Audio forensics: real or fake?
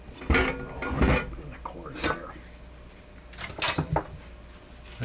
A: real